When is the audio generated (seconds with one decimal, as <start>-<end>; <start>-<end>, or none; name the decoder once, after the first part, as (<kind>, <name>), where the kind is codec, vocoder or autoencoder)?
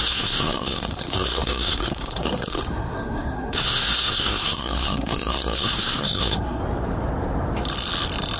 0.0-6.6 (codec, SNAC)